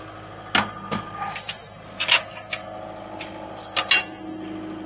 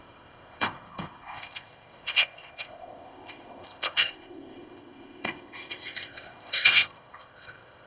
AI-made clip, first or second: second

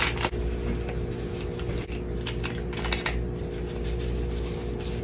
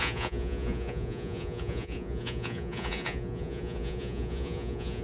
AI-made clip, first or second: second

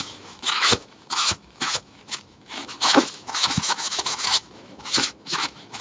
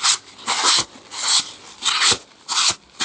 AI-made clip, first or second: first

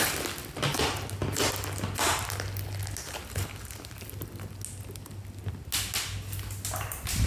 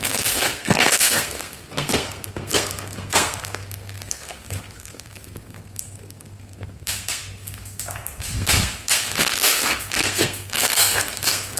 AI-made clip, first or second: second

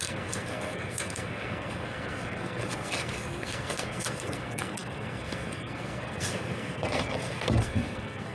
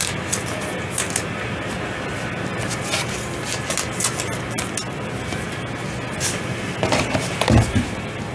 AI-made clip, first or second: first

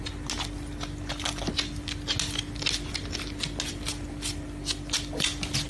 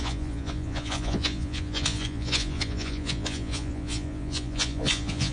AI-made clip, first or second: second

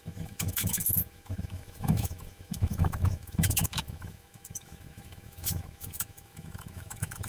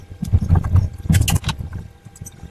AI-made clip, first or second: first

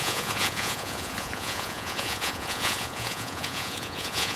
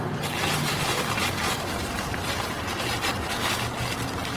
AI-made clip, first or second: first